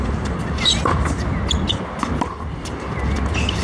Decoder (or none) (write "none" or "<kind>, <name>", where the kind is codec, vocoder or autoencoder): none